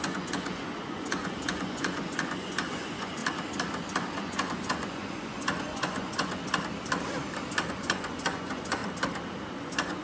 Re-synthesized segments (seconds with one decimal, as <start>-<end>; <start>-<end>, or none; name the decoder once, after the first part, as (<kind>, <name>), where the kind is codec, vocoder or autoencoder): 0.0-3.2 (vocoder, Vocos); 4.1-6.4; 7.7-8.8; 9.6-10.0